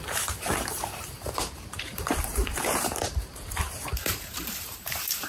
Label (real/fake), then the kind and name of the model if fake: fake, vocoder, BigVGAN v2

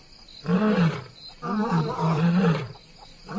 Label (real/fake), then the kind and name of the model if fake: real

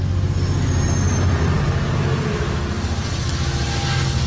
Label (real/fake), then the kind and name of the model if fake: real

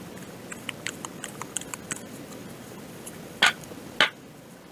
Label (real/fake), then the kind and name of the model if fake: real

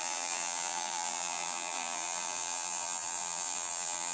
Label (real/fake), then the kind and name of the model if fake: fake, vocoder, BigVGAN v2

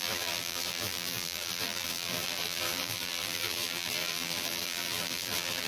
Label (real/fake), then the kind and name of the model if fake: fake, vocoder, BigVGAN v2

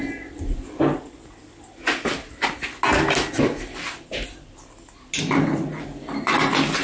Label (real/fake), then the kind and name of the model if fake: real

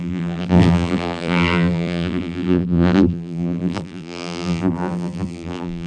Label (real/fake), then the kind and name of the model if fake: fake, vocoder, BigVGAN v2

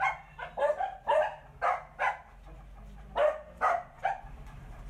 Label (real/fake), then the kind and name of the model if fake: real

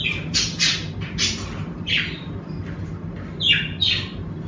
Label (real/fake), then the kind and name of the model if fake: real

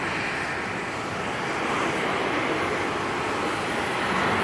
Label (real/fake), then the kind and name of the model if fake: real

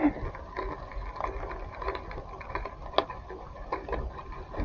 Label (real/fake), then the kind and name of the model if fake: real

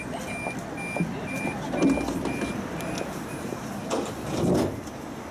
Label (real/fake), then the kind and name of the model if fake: real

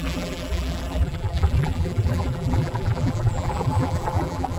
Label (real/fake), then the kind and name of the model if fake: fake, vocoder, BigVGAN v2